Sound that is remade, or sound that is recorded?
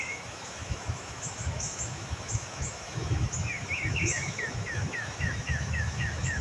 remade